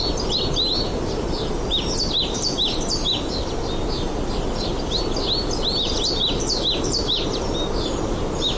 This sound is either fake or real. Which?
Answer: real